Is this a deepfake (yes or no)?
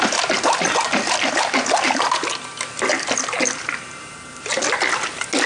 no